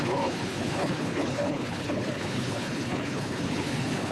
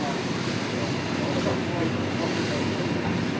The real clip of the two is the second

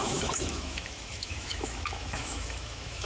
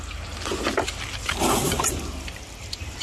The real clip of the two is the second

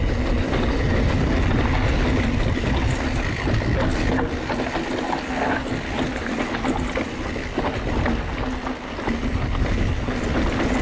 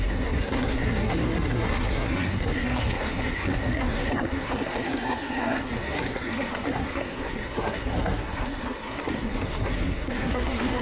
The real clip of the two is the first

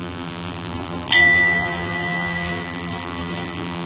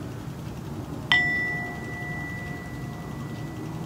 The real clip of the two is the second